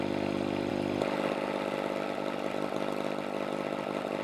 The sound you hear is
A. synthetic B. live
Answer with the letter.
B